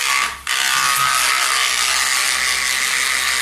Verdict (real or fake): real